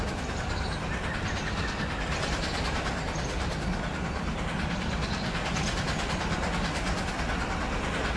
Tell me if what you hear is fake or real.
real